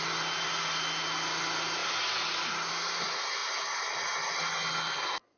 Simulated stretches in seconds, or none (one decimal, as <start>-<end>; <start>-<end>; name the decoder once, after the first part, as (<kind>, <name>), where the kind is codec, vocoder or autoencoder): none